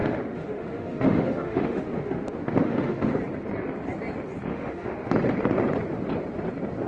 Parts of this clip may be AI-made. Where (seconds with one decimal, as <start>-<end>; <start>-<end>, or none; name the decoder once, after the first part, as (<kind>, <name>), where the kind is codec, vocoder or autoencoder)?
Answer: 0.0-3.2 (autoencoder, DAC-VAE); 4.5-5.1

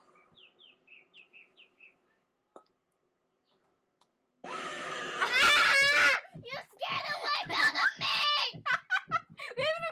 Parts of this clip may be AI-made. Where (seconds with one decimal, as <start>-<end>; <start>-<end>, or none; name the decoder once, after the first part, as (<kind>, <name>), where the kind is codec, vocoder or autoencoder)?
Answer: 1.1-5.0 (autoencoder, DAC-VAE)

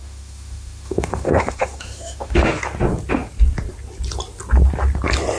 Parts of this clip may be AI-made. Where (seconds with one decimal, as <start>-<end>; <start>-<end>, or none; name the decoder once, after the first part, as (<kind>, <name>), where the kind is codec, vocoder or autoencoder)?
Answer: 0.0-2.6 (autoencoder, DAC-VAE)

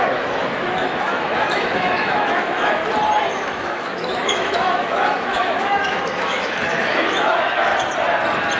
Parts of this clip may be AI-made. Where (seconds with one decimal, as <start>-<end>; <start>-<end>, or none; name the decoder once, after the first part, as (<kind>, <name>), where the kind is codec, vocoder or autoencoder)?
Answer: 0.0-2.8 (autoencoder, DAC-VAE); 3.3-7.7

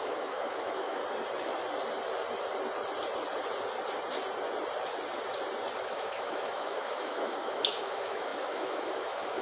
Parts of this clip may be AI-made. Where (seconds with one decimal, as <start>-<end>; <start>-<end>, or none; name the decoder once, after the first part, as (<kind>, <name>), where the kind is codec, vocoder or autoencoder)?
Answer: 0.0-1.0 (autoencoder, DAC-VAE); 5.8-9.4

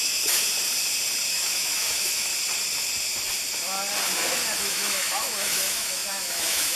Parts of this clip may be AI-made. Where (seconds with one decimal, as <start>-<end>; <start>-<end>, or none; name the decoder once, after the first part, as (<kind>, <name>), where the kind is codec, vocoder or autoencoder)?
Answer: 0.0-0.5 (autoencoder, DAC-VAE); 1.3-2.3; 4.6-6.8

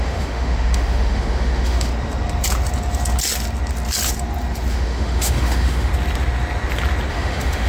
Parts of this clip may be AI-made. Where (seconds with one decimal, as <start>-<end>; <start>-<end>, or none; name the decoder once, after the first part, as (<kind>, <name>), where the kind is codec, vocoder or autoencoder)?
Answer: 0.0-1.9 (autoencoder, DAC-VAE); 4.7-5.9; 7.1-7.7